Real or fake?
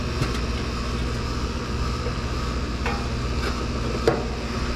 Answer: real